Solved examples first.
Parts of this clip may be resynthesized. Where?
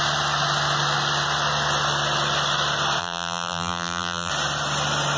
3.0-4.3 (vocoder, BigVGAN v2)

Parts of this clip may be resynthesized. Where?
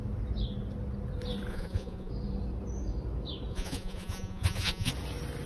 1.5-2.1 (vocoder, Vocos); 3.5-4.9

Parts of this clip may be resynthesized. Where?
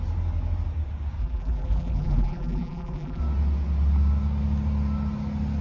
1.2-3.2 (vocoder, BigVGAN v2)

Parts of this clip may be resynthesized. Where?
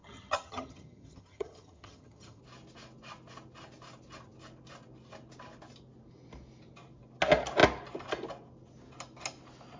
0.0-2.4 (vocoder, HiFi-GAN)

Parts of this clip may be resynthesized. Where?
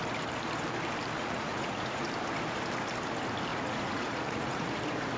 1.2-2.0 (vocoder, Vocos); 3.5-4.8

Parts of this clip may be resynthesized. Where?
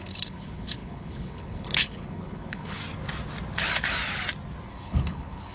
0.0-2.8 (codec, HILCodec); 4.7-5.5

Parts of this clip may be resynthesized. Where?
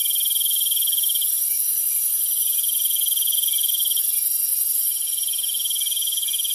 none